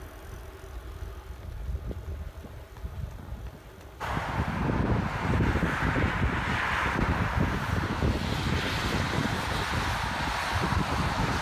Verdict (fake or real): real